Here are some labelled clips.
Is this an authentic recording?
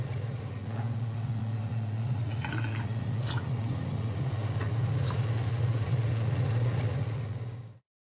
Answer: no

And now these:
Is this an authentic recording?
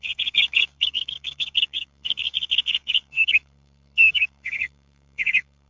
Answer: no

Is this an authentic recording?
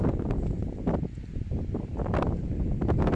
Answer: yes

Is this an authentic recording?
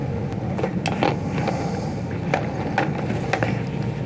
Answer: yes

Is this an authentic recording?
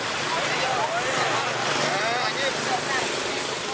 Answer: yes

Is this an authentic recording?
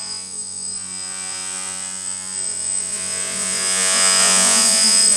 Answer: no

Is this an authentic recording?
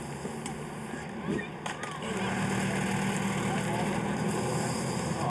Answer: yes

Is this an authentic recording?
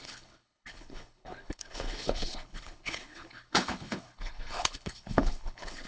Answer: no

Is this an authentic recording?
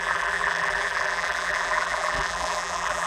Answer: no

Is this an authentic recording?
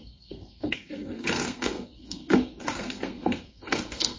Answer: no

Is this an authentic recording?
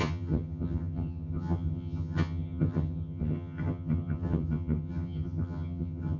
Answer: no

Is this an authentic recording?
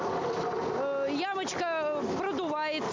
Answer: yes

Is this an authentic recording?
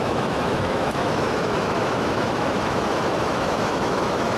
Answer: no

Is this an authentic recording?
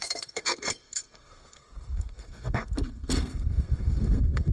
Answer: no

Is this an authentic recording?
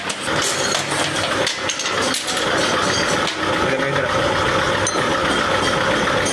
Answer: yes